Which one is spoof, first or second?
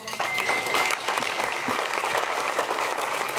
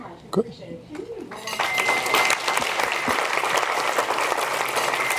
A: first